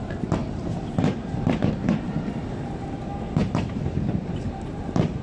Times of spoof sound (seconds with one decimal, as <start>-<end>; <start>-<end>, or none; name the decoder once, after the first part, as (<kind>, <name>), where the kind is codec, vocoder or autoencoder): 0.4-2.1 (vocoder, BigVGAN v2); 3.4-5.2

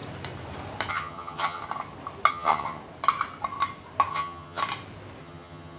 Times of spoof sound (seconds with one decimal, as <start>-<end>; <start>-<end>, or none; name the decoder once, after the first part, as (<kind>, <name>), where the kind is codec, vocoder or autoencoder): 0.9-1.6 (vocoder, HiFi-GAN); 2.3-2.8; 4.1-4.6; 5.2-5.8